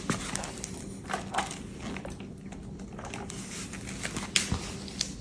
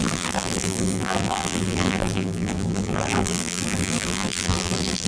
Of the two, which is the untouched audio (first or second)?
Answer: first